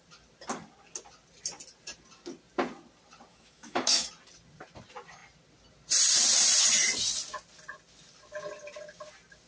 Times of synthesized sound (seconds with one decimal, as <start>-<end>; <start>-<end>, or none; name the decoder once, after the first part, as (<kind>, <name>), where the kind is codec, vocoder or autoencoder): 3.3-4.1 (autoencoder, DAC-VAE)